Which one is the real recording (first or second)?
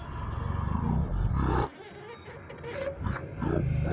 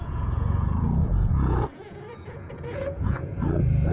first